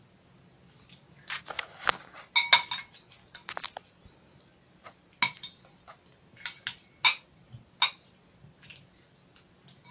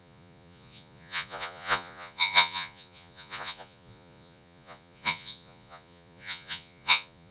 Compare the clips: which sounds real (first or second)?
first